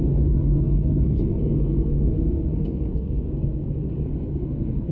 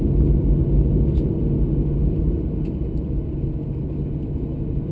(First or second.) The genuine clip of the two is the second